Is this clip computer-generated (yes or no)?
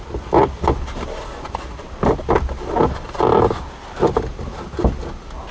no